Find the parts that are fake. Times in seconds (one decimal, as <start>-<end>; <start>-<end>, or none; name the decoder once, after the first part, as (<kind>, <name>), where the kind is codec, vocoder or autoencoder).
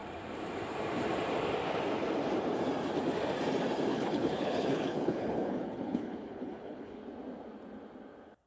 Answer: 3.9-7.0 (codec, HILCodec)